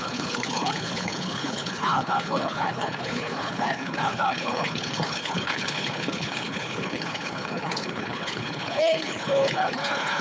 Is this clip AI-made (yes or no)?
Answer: yes